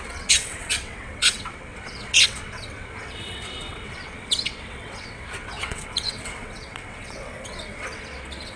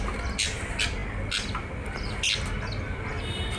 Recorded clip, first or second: second